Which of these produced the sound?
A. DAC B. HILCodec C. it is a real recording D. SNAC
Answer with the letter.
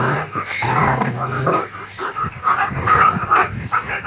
A